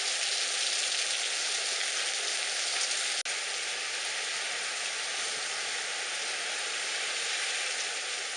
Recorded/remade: recorded